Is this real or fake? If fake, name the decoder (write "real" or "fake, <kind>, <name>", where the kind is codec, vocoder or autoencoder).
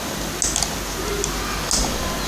real